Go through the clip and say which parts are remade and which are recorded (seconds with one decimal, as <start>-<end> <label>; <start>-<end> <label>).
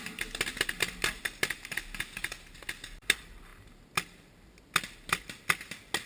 0.0-6.1 recorded